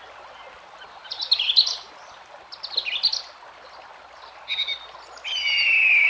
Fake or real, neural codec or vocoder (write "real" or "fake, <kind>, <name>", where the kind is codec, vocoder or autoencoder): real